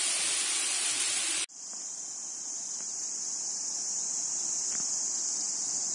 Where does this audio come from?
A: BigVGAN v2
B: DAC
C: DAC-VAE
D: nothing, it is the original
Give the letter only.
D